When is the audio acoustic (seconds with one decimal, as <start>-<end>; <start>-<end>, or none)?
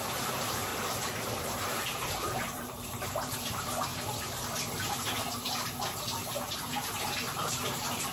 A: 0.7-2.1; 3.9-6.5